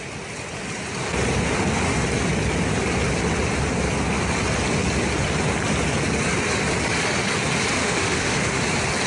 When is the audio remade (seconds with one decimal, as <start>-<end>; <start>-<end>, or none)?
7.8-8.6